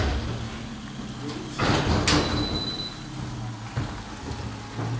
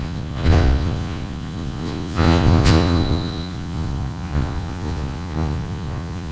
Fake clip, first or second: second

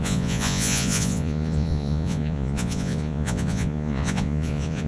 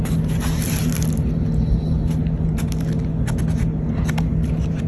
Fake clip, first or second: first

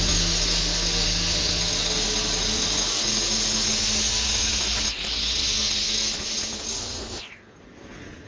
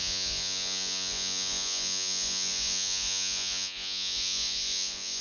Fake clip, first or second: second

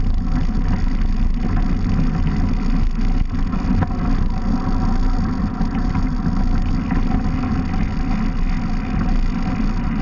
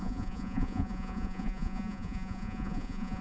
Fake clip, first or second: second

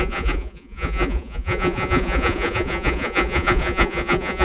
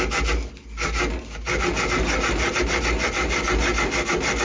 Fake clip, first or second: first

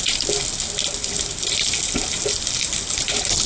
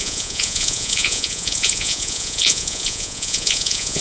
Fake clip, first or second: second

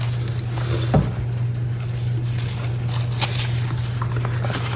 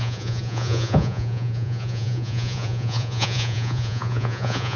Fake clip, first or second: second